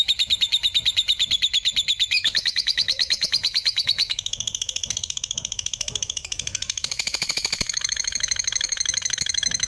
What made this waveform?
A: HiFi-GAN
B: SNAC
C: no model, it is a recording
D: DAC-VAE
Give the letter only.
D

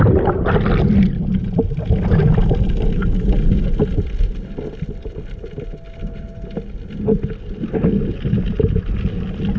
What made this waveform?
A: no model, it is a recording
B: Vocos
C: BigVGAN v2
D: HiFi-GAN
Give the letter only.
A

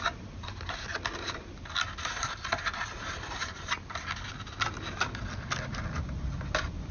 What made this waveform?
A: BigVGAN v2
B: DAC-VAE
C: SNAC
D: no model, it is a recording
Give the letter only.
D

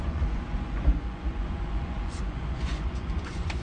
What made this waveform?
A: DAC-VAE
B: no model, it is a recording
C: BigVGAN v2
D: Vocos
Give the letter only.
D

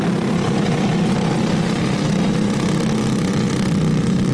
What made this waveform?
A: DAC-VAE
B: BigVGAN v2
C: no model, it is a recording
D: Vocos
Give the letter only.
C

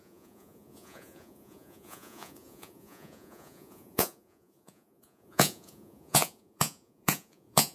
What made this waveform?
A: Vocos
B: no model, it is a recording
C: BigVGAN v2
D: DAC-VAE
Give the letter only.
A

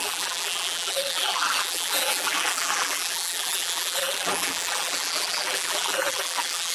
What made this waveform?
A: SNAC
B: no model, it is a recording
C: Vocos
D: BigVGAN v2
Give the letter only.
D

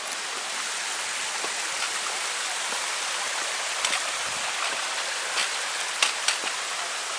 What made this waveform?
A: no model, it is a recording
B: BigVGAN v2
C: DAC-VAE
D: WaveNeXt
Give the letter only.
A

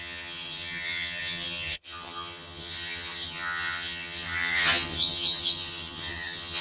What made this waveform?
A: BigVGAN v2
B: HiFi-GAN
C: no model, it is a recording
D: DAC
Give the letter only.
B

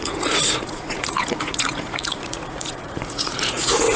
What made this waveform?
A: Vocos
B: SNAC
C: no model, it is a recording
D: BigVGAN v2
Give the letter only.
A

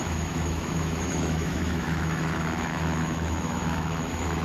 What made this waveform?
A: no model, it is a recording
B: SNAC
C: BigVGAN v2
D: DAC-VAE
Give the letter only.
D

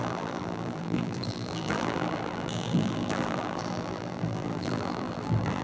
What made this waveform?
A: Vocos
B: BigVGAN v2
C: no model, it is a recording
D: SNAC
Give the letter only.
B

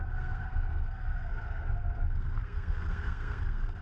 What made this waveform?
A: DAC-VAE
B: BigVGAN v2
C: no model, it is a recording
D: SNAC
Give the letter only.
D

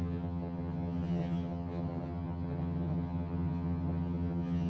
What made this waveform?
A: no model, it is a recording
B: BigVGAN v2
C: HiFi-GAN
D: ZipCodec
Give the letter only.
C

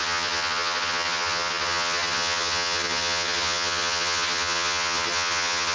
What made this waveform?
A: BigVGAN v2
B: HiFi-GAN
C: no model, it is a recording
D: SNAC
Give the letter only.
B